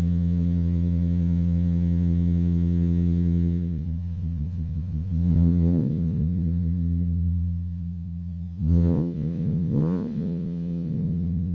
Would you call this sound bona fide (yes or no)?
no